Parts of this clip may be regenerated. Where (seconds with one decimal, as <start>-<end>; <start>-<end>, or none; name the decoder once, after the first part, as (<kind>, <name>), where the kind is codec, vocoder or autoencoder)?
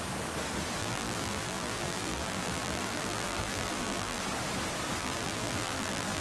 0.8-4.2 (vocoder, BigVGAN v2); 5.0-6.2